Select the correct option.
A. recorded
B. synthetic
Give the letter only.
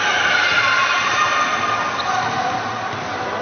A